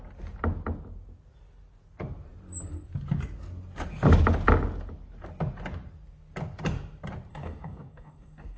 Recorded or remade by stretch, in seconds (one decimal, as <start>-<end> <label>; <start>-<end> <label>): 0.0-7.3 recorded; 7.3-8.6 remade

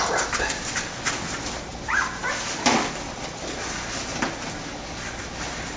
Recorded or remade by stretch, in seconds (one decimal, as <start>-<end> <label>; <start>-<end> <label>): 0.0-5.8 recorded

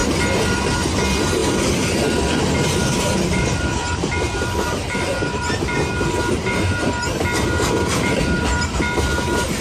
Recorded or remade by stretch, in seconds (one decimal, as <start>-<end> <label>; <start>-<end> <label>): 0.0-1.4 recorded; 1.4-2.4 remade; 2.4-2.8 recorded; 2.8-5.4 remade; 5.4-9.6 recorded

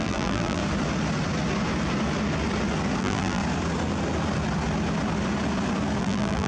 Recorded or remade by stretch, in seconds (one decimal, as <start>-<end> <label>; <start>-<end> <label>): 0.0-0.6 remade; 0.6-3.0 recorded; 3.0-3.4 remade; 3.4-6.0 recorded; 6.0-6.5 remade